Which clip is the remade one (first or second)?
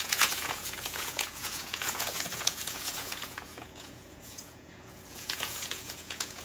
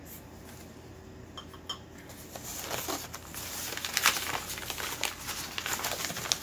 first